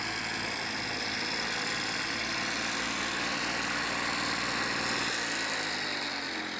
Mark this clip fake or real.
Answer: real